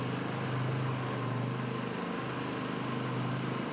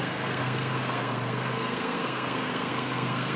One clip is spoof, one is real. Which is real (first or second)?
first